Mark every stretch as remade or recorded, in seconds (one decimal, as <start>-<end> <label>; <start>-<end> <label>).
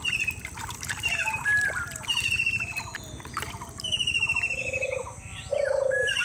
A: 0.0-0.6 recorded; 0.6-1.5 remade; 1.5-3.2 recorded; 3.2-6.2 remade